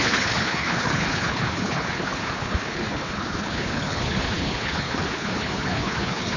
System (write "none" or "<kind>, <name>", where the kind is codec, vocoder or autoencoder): codec, HILCodec